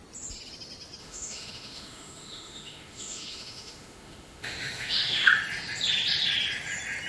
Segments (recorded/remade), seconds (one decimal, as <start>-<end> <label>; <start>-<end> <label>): 0.0-1.0 recorded; 1.0-5.3 remade; 5.3-7.1 recorded